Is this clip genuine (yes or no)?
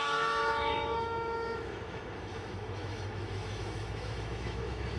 no